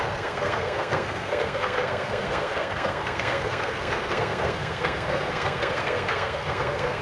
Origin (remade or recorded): remade